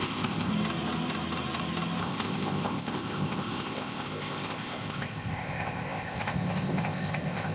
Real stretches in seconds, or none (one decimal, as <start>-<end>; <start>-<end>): 0.5-2.0